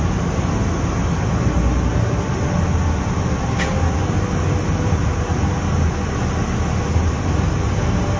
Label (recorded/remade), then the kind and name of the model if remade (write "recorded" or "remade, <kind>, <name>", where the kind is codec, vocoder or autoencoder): recorded